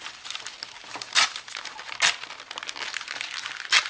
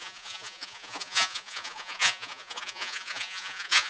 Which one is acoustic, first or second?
first